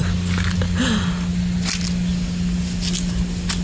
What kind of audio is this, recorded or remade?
recorded